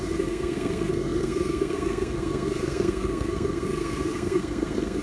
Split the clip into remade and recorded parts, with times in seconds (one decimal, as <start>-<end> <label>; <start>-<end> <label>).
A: 0.0-5.0 remade